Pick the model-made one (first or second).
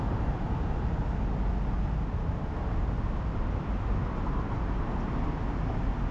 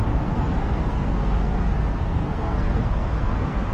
second